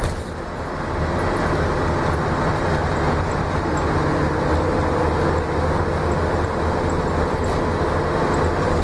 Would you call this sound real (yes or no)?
yes